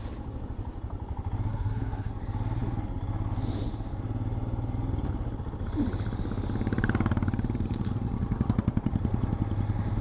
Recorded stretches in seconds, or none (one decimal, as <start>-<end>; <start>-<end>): 0.0-1.5; 2.1-10.0